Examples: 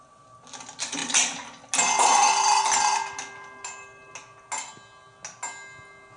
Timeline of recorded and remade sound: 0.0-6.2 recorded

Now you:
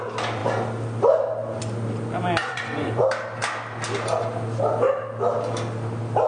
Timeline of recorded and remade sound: 0.0-2.4 recorded; 2.4-3.0 remade; 3.0-6.3 recorded